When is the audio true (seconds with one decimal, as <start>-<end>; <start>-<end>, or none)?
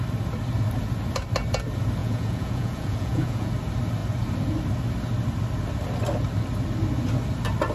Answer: 0.0-2.0; 3.5-7.7